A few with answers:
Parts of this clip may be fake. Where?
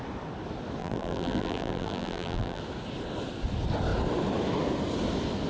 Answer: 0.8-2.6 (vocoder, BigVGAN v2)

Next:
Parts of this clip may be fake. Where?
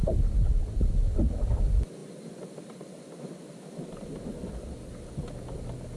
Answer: none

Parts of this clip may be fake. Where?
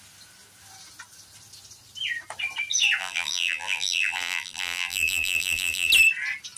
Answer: 3.0-5.9 (vocoder, BigVGAN v2)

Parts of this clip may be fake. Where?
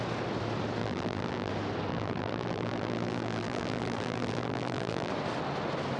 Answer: 0.8-1.5 (vocoder, BigVGAN v2); 1.9-5.1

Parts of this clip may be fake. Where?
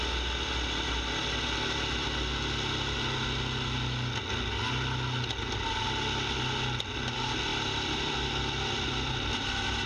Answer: 7.5-9.9 (vocoder, BigVGAN v2)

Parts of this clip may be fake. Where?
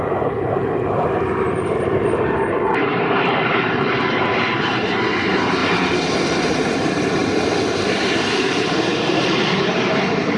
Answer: 0.0-5.6 (vocoder, BigVGAN v2); 6.4-7.2; 7.9-10.4